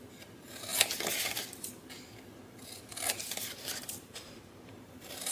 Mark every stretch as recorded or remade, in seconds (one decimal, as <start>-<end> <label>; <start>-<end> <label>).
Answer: 0.0-0.7 remade; 0.7-3.1 recorded; 3.1-5.3 remade